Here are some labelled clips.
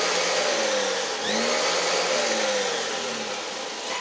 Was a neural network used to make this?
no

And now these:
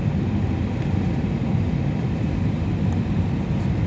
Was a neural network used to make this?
no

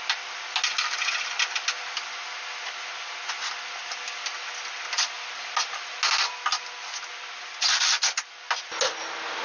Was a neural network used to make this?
no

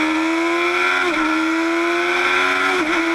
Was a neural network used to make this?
no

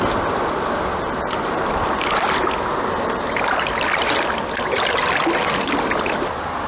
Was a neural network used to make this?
no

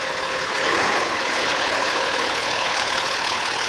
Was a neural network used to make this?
yes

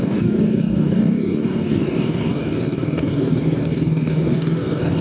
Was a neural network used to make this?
yes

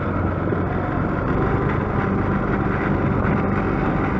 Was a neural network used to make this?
no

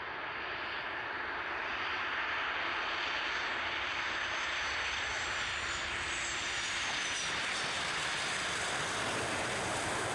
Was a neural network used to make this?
yes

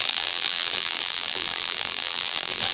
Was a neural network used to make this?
yes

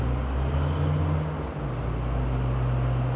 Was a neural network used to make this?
no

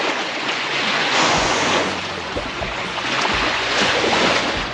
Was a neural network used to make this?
yes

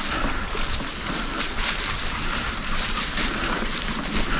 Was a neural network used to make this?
no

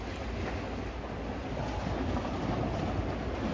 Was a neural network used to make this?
no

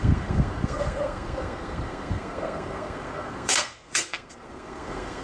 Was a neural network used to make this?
yes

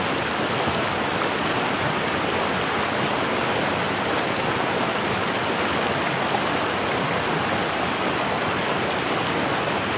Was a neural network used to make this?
no